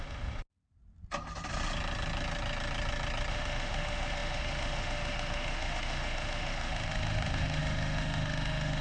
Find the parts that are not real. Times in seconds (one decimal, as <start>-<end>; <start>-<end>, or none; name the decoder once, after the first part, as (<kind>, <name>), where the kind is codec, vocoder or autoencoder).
0.0-0.4 (autoencoder, DAC-VAE); 3.3-8.8